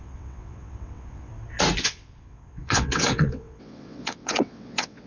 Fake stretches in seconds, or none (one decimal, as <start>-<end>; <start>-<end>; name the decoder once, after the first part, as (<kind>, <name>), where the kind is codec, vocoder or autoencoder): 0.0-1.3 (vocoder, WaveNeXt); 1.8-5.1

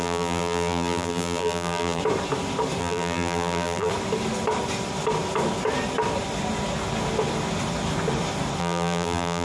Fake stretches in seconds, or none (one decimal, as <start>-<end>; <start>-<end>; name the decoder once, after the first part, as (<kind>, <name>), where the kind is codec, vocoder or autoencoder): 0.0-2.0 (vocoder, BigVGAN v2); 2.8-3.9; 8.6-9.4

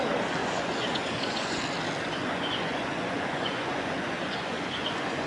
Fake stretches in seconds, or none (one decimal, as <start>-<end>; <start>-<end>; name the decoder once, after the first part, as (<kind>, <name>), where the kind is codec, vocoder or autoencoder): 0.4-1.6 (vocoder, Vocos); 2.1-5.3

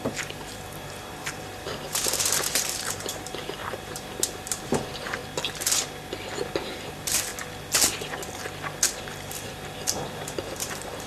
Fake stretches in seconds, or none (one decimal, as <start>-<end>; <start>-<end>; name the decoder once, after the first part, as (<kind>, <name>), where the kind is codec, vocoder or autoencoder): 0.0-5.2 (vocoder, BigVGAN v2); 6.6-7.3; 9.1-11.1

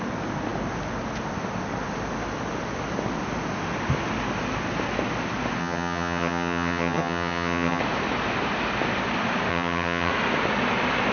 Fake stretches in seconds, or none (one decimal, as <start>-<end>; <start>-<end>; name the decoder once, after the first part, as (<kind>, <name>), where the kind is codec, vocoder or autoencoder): 5.6-7.8 (vocoder, HiFi-GAN); 9.5-10.1

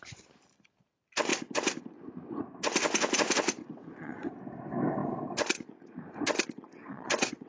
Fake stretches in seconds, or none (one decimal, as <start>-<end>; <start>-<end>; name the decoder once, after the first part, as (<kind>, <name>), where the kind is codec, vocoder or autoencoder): 3.6-4.4 (vocoder, WaveNeXt); 6.8-7.5

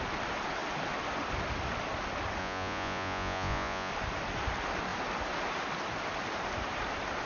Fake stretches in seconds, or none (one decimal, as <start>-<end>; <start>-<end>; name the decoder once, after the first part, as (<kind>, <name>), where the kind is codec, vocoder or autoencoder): 2.4-3.9 (vocoder, Vocos)